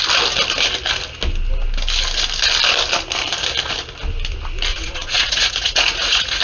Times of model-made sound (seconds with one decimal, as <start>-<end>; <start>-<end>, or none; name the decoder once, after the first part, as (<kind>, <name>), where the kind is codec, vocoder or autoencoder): 4.7-6.4 (vocoder, Vocos)